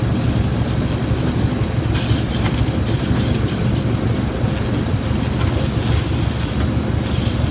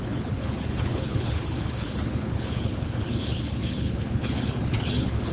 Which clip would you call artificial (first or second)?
second